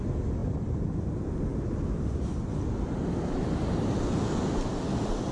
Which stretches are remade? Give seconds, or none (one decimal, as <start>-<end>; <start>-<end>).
none